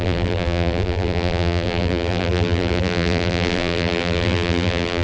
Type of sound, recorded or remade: remade